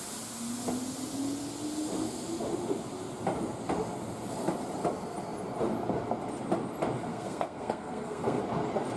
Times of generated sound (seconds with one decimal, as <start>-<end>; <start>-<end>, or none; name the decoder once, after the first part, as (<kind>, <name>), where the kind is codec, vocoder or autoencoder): 7.1-8.4 (codec, SNAC)